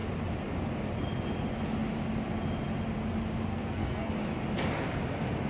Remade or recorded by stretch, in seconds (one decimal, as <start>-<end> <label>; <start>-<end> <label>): 0.0-3.5 recorded; 3.5-4.1 remade; 4.1-5.5 recorded